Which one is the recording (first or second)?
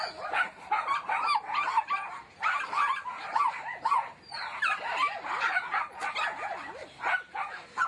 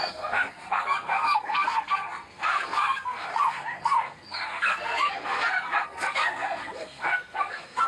first